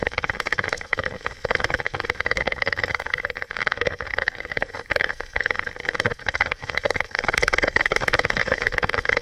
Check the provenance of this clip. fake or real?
fake